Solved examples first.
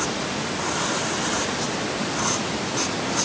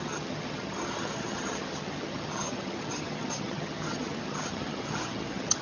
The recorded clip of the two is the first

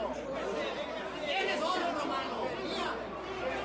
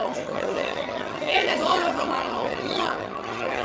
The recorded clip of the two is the first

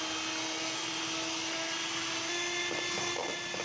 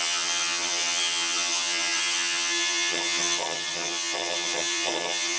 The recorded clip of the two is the first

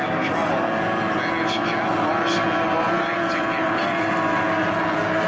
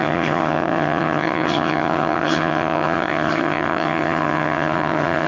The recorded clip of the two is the first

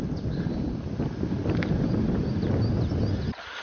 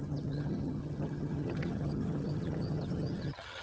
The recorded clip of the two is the first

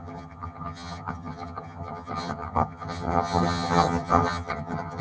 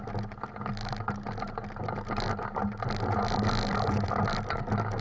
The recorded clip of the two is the second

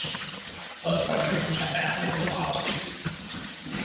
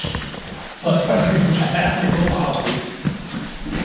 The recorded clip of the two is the second